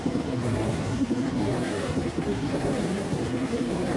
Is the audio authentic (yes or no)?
no